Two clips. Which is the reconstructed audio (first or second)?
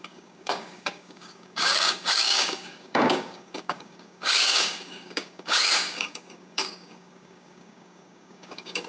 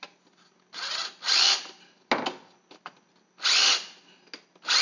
first